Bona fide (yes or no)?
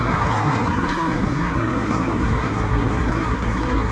no